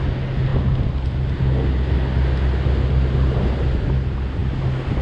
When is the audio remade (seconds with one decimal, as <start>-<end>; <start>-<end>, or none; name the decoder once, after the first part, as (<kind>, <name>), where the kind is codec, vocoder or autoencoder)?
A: none